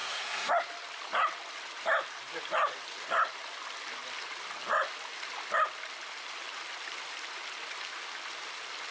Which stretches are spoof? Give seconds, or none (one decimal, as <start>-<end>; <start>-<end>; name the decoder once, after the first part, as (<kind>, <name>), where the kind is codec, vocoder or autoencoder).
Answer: 0.0-0.5 (codec, SNAC)